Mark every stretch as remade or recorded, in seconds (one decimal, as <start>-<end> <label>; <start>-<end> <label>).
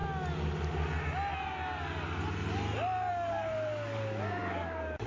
0.0-3.1 recorded; 3.1-5.1 remade